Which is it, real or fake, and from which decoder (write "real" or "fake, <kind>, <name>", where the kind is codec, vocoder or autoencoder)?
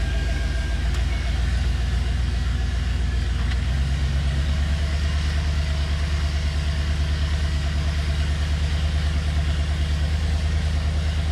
fake, codec, DAC